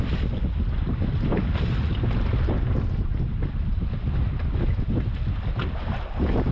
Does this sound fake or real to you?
real